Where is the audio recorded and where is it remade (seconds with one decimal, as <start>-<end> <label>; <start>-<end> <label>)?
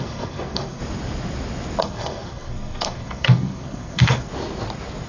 0.0-0.8 remade; 0.8-1.8 recorded; 1.8-4.3 remade; 4.3-5.1 recorded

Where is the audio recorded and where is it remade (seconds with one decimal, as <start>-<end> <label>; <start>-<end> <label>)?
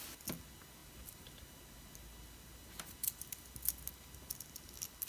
0.0-5.1 recorded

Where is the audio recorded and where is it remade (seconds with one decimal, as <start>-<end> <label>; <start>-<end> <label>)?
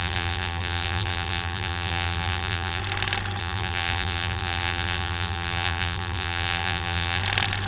0.0-2.8 remade; 2.8-3.4 recorded; 3.4-7.2 remade; 7.2-7.7 recorded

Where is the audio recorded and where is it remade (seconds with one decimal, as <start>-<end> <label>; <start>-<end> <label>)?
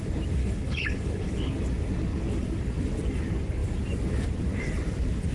0.0-0.4 recorded; 0.4-1.5 remade; 1.5-5.3 recorded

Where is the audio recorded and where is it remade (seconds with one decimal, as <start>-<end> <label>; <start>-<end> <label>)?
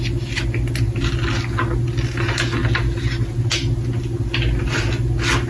0.0-5.5 recorded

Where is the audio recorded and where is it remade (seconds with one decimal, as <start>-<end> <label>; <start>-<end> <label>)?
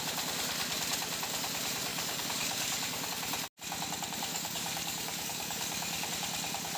0.0-1.9 recorded; 1.9-3.1 remade; 3.1-4.3 recorded; 4.3-6.1 remade; 6.1-6.8 recorded